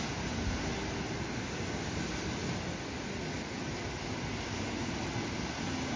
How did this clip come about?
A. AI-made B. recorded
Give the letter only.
B